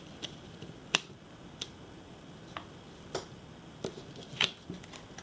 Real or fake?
real